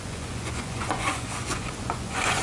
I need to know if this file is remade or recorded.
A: remade